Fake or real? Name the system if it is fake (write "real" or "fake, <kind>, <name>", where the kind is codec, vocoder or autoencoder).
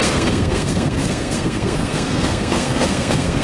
fake, codec, SNAC